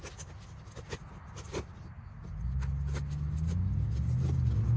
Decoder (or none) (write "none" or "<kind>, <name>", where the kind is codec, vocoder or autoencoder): none